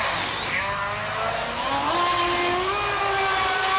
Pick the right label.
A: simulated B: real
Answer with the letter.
B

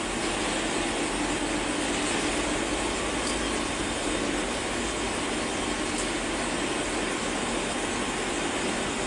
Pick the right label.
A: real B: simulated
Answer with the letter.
A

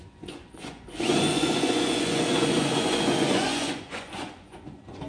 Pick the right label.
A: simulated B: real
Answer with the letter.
A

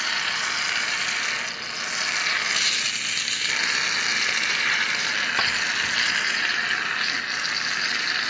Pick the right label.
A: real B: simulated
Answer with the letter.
A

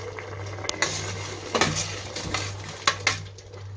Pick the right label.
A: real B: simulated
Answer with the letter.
A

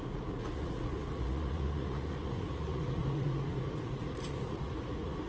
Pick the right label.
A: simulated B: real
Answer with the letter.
A